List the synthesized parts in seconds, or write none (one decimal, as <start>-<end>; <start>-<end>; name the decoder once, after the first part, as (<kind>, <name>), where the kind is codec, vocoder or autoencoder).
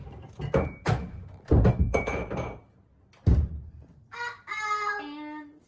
1.7-2.2 (autoencoder, DAC-VAE)